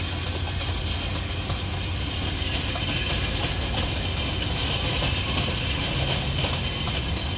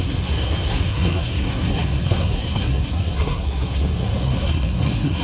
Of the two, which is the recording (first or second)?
first